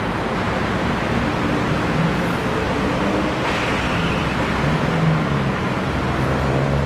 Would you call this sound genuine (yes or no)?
yes